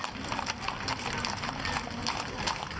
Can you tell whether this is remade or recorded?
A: recorded